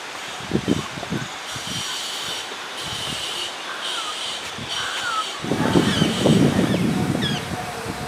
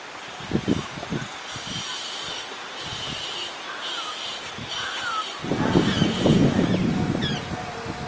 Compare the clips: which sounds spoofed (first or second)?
first